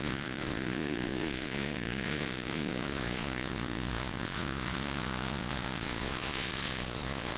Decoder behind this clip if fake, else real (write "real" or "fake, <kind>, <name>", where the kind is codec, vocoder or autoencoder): fake, vocoder, Vocos